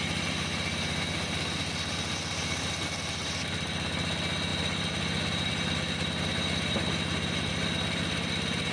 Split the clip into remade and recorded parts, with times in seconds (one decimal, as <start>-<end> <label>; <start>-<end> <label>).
0.0-8.7 recorded